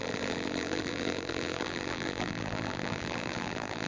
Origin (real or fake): fake